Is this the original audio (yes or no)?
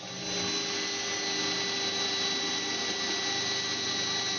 yes